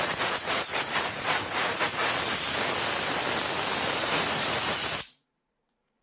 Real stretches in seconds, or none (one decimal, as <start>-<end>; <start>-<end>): 2.0-4.0